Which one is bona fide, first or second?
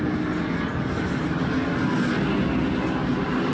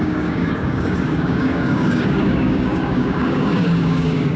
first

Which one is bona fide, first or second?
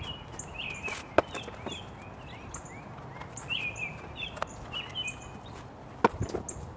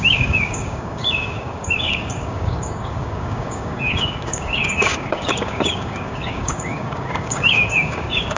first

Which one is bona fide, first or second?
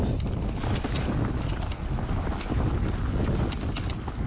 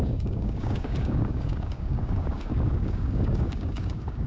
first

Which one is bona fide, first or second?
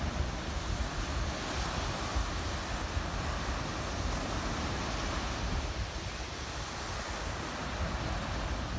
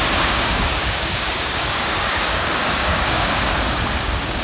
first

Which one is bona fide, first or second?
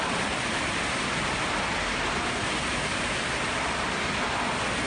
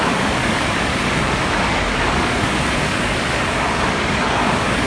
first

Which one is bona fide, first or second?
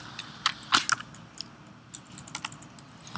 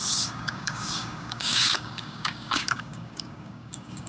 first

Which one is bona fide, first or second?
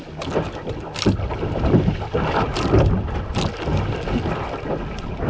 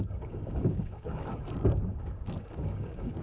first